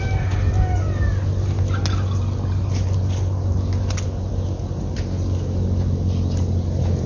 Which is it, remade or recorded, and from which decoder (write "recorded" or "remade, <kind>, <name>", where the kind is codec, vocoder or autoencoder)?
recorded